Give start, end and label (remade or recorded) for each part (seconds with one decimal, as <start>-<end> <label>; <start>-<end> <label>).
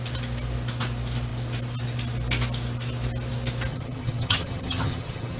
0.0-3.7 recorded; 3.7-5.4 remade